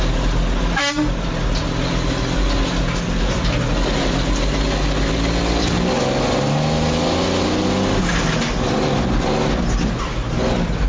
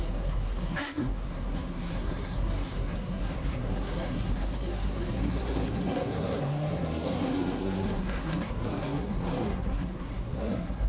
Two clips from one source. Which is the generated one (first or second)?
second